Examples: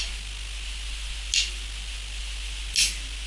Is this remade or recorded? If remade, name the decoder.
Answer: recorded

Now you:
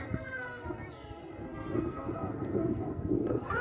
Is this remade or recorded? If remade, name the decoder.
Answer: remade, codec, SNAC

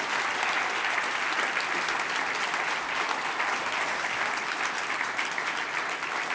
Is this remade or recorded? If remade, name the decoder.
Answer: recorded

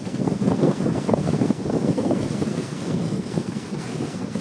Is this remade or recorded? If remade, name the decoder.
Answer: remade, codec, SNAC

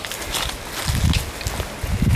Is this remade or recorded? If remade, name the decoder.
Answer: recorded